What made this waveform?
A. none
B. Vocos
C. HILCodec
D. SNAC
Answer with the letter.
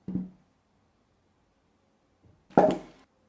A